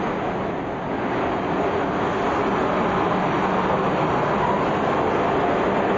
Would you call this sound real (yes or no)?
yes